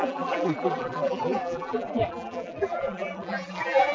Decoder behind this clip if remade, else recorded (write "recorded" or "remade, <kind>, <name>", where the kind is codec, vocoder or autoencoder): remade, vocoder, BigVGAN v2